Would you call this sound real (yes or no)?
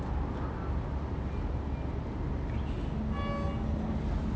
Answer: yes